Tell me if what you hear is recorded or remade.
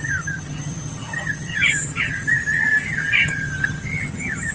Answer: remade